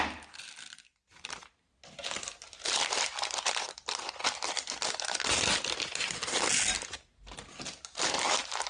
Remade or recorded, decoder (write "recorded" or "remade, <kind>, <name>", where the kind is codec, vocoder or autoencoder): recorded